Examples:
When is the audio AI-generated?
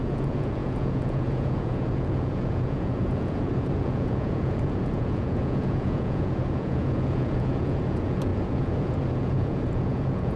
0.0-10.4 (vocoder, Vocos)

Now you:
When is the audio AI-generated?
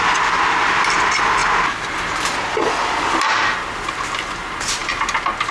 none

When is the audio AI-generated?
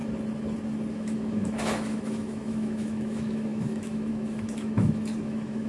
0.9-5.7 (autoencoder, DAC-VAE)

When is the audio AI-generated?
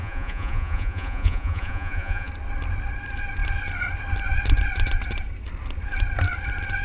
0.0-2.3 (vocoder, Vocos)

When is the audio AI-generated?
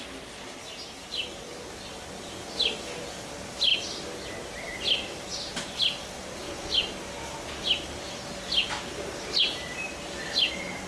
none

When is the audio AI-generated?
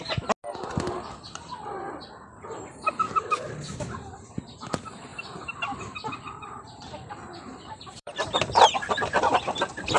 5.1-8.1 (vocoder, BigVGAN v2)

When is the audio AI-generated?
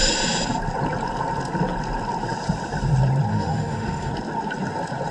3.3-4.1 (autoencoder, DAC-VAE)